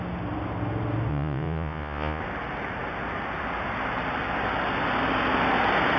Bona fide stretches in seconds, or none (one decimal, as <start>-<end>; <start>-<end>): 0.0-1.1; 2.2-6.0